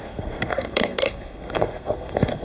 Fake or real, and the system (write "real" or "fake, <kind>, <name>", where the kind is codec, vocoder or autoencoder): fake, codec, SNAC